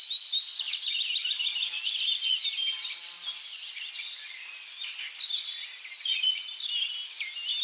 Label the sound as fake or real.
real